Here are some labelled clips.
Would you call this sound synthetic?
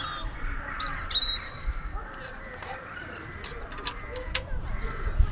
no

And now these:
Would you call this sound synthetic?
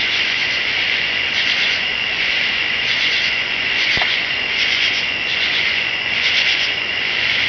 yes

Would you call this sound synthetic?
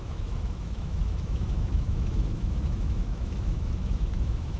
yes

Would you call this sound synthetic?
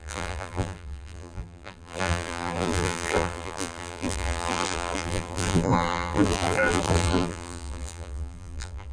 yes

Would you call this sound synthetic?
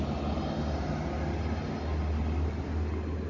no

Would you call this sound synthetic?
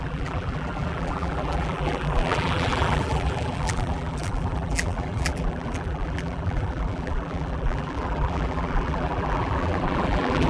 yes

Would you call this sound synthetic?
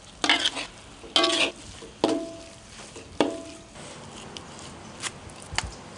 no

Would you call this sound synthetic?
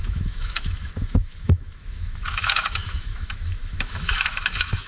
yes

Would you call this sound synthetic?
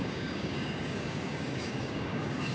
yes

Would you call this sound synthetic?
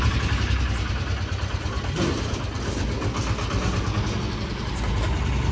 no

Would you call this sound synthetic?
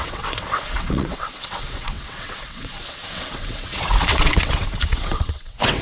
yes